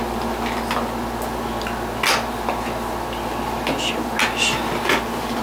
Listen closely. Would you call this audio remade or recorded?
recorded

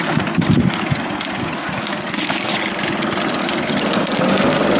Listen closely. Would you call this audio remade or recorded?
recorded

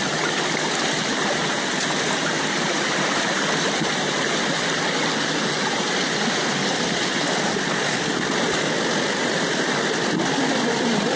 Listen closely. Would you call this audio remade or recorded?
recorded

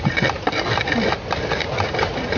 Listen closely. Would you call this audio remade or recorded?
recorded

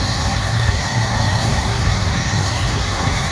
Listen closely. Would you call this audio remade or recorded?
remade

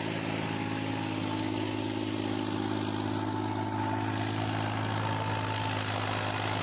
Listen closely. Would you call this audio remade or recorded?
recorded